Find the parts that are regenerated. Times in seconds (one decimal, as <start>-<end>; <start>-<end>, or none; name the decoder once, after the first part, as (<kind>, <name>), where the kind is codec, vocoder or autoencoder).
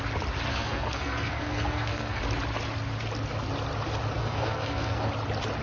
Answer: 0.5-2.2 (codec, SNAC); 4.2-5.1